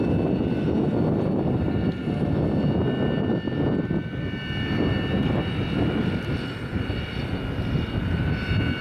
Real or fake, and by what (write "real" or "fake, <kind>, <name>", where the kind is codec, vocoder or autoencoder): real